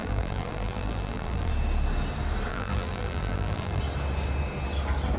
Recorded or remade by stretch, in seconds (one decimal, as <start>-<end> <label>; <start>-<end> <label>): 0.0-1.5 remade; 1.5-2.5 recorded; 2.5-3.8 remade; 3.8-5.2 recorded

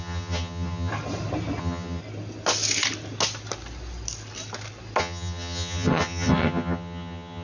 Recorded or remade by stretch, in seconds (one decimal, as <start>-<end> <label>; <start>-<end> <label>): 0.0-0.9 remade; 0.9-1.6 recorded; 1.6-2.0 remade; 2.0-5.0 recorded; 5.0-7.4 remade

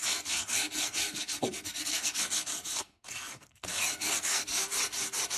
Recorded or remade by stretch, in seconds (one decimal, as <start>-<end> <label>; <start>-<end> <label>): 0.0-4.7 remade; 4.7-5.4 recorded

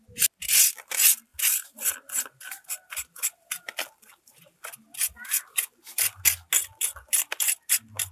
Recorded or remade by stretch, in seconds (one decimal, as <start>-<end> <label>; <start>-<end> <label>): 0.0-1.3 recorded; 1.3-6.2 remade; 6.2-6.7 recorded; 6.7-8.1 remade

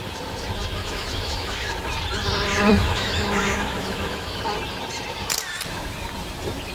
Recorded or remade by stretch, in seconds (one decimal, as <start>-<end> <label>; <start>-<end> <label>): 0.0-0.8 recorded; 0.8-1.7 remade; 1.7-2.8 recorded; 2.8-4.4 remade; 4.4-6.7 recorded

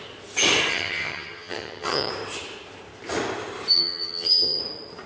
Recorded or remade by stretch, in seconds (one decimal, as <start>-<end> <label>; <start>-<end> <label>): 0.0-0.7 recorded; 0.7-2.1 remade; 2.1-3.7 recorded; 3.7-4.6 remade; 4.6-5.1 recorded